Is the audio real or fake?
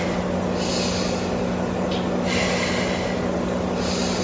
real